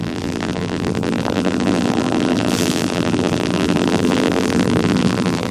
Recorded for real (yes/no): no